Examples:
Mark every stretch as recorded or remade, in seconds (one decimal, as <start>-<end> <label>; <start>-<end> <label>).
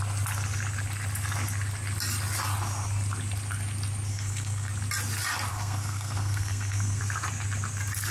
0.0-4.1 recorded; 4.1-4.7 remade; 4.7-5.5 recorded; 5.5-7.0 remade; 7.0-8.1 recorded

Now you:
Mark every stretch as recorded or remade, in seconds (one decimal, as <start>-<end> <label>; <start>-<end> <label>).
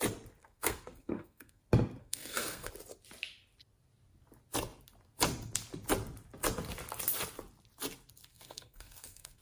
0.0-0.4 recorded; 0.4-1.6 remade; 1.6-2.0 recorded; 2.0-2.7 remade; 2.7-8.3 recorded; 8.3-9.4 remade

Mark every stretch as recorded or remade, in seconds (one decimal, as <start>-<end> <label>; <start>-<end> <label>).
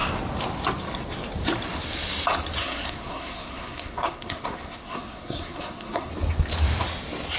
0.0-2.6 recorded; 2.6-6.1 remade; 6.1-7.4 recorded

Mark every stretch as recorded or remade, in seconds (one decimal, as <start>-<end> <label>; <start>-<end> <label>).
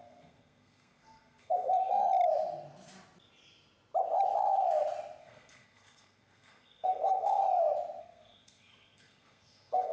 0.0-2.0 remade; 2.0-5.2 recorded; 5.2-7.4 remade; 7.4-8.0 recorded; 8.0-9.9 remade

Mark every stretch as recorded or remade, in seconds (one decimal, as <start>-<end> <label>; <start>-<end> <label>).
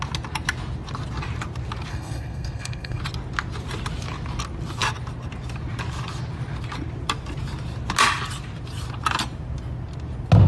0.0-1.9 recorded; 1.9-3.0 remade; 3.0-10.5 recorded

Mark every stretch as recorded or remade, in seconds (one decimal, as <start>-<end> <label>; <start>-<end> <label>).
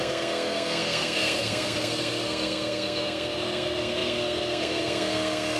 0.0-5.6 remade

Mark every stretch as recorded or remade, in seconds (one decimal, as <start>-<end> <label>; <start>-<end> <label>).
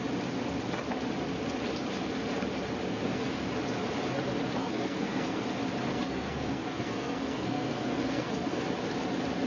0.0-2.9 recorded; 2.9-3.5 remade; 3.5-4.6 recorded; 4.6-5.4 remade; 5.4-5.9 recorded; 5.9-8.6 remade; 8.6-9.5 recorded